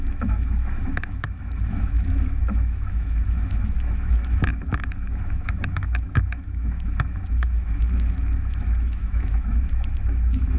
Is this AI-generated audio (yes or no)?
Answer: yes